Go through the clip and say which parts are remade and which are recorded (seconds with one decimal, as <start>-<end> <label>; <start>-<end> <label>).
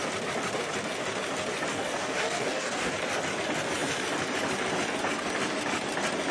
0.0-1.7 recorded; 1.7-2.9 remade; 2.9-6.3 recorded